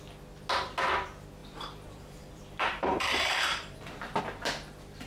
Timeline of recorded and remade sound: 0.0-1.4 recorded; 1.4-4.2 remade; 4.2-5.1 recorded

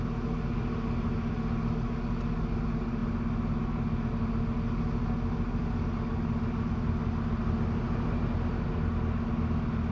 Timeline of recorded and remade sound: 0.0-9.9 recorded

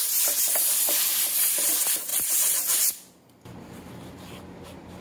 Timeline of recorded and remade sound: 0.0-2.1 recorded; 2.1-3.4 remade; 3.4-5.0 recorded

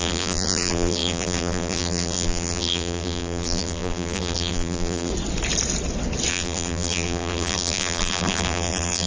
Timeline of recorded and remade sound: 0.0-5.1 remade; 5.1-6.3 recorded; 6.3-9.1 remade

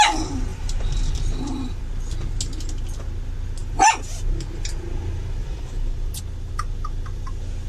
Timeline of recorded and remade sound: 0.0-0.5 recorded; 0.5-1.8 remade; 1.8-3.6 recorded; 3.6-4.2 remade; 4.2-5.4 recorded; 5.4-6.2 remade; 6.2-7.7 recorded

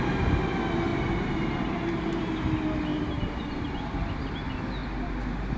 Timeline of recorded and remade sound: 0.0-0.9 recorded; 0.9-2.2 remade; 2.2-2.9 recorded; 2.9-3.8 remade; 3.8-4.8 recorded; 4.8-5.6 remade

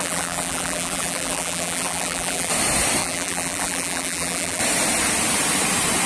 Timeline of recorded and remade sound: 0.0-2.5 remade; 2.5-3.0 recorded; 3.0-4.6 remade; 4.6-6.1 recorded